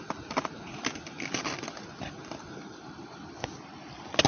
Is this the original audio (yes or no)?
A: yes